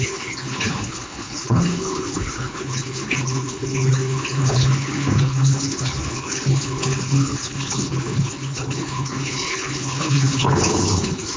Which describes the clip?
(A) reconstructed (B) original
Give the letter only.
A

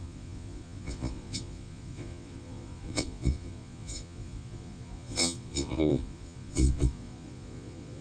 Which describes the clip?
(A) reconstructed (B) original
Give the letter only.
A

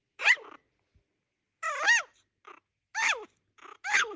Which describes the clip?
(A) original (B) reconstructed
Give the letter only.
A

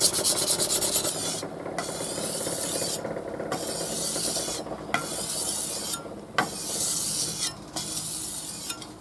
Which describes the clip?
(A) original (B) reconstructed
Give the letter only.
A